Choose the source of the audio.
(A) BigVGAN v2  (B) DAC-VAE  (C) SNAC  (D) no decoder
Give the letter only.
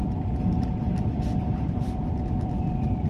A